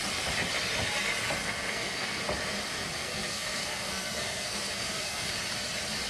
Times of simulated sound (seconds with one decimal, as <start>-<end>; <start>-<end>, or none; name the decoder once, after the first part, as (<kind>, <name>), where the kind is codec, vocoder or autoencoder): 1.4-2.2 (codec, SNAC); 3.0-5.3